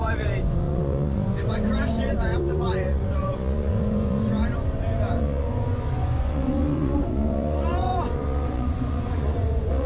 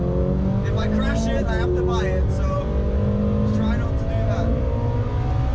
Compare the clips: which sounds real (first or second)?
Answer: second